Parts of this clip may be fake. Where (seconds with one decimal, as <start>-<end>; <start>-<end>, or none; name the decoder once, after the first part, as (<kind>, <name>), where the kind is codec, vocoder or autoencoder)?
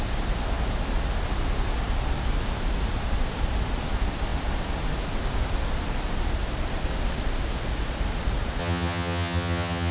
8.6-9.9 (vocoder, HiFi-GAN)